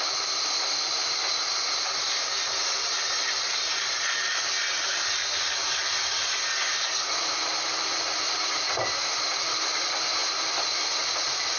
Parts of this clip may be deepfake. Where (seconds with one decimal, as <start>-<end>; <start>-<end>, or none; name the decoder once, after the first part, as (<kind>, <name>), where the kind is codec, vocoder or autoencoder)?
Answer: none